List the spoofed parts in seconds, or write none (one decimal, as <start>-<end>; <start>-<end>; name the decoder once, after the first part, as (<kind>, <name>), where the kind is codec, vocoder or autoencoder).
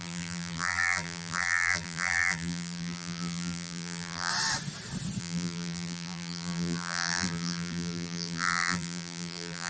0.0-4.3 (vocoder, BigVGAN v2); 5.2-9.7